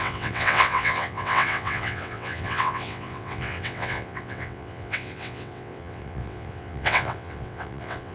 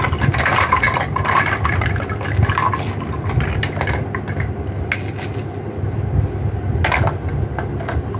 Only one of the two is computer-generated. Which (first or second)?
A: first